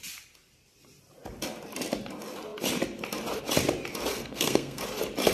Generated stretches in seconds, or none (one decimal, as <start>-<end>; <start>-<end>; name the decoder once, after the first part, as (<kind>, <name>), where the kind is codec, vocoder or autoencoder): 4.1-4.8 (codec, SNAC)